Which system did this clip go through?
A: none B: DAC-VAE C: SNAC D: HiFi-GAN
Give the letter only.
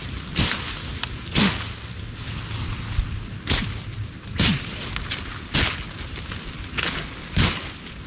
A